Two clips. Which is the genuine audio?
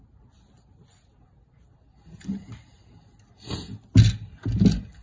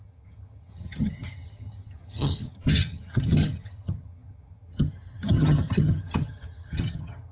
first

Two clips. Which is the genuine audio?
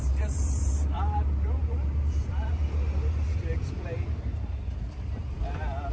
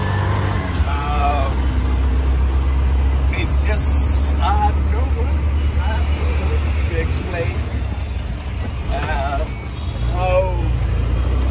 second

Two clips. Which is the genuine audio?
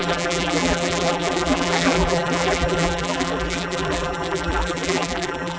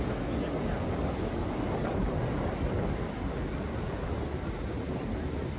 second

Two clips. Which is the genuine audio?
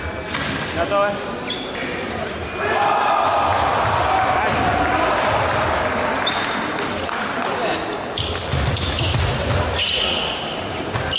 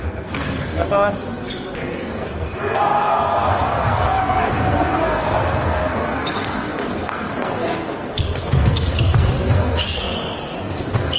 first